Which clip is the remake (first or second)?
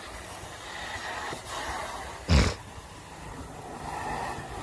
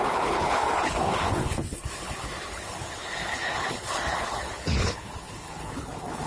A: second